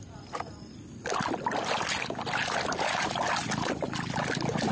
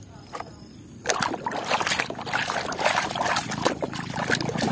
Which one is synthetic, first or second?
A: second